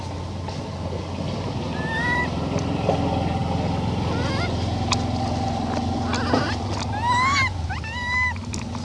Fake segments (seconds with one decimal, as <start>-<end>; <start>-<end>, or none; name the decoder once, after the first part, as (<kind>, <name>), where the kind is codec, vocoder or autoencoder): none

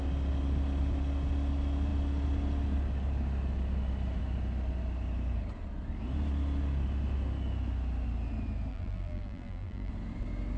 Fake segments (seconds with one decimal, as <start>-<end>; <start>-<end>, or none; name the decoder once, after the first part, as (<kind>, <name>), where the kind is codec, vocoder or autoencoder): 8.7-9.9 (vocoder, BigVGAN v2)